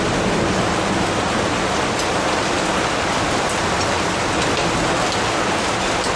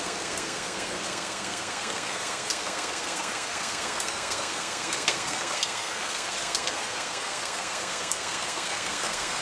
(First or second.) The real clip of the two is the first